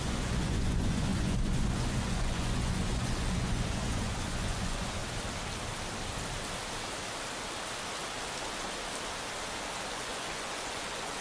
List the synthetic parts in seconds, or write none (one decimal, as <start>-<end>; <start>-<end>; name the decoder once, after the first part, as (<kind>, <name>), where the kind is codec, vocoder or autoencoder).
0.0-5.0 (vocoder, Vocos); 9.9-11.2